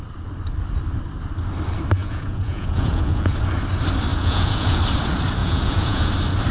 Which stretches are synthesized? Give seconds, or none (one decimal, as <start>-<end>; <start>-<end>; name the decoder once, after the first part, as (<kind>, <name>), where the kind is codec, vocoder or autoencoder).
2.0-3.3 (vocoder, Vocos); 4.1-4.8; 5.4-6.1